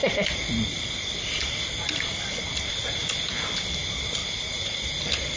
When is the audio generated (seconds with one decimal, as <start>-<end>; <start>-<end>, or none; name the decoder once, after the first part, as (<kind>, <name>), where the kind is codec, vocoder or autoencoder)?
4.2-4.8 (vocoder, BigVGAN v2)